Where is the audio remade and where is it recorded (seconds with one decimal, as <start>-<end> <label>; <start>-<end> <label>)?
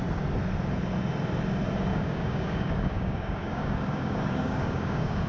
0.0-1.9 recorded; 1.9-5.3 remade